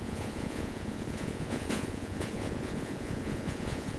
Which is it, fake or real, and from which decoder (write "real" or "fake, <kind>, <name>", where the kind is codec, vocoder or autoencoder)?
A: fake, vocoder, Vocos